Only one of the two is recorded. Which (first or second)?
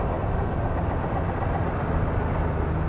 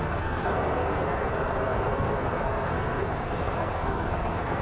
first